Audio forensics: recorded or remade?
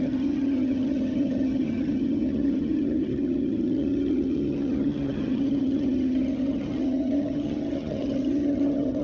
remade